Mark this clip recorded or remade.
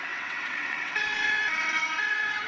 remade